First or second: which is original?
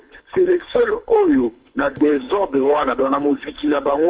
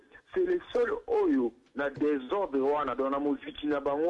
second